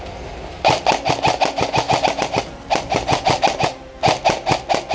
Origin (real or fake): real